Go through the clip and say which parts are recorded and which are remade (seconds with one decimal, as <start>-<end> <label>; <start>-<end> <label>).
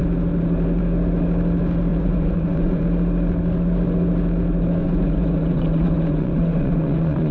0.0-1.9 recorded; 1.9-2.8 remade; 2.8-4.8 recorded; 4.8-7.3 remade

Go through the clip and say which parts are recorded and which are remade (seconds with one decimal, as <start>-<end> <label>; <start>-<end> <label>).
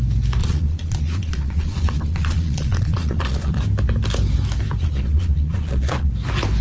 0.0-0.4 recorded; 0.4-3.6 remade; 3.6-4.8 recorded; 4.8-6.1 remade; 6.1-6.6 recorded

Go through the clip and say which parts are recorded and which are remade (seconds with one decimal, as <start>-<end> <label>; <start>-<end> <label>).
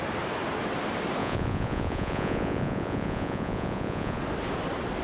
0.0-1.2 recorded; 1.2-4.2 remade; 4.2-5.0 recorded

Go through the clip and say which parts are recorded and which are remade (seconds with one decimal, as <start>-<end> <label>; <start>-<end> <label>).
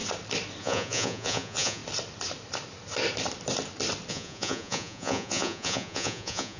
0.0-0.6 recorded; 0.6-1.8 remade; 1.8-4.1 recorded; 4.1-6.6 remade